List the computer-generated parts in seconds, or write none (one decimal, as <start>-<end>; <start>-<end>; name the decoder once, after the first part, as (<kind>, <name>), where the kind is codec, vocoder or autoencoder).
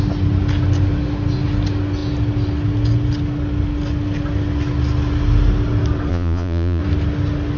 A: 6.1-6.8 (vocoder, Vocos)